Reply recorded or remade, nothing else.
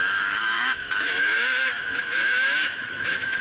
remade